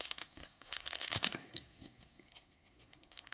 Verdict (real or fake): fake